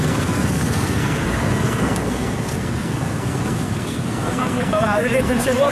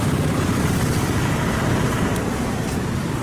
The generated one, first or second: first